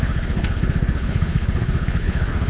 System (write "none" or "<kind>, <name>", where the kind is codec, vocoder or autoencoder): codec, HILCodec